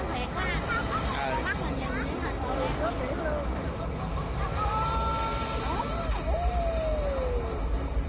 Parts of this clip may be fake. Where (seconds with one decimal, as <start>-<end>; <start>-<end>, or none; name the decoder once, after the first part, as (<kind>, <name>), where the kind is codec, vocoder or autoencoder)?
none

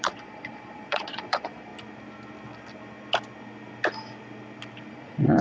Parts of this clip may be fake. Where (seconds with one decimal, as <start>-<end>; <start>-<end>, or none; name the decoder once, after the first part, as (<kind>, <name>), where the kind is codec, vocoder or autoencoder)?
0.0-1.7 (vocoder, Vocos); 4.9-5.4